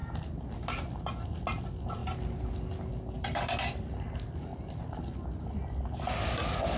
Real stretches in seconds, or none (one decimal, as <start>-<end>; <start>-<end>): 0.0-6.8